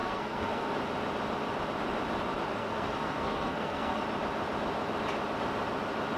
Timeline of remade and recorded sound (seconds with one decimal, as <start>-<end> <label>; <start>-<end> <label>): 0.0-0.7 remade; 0.7-2.5 recorded; 2.5-4.0 remade; 4.0-6.2 recorded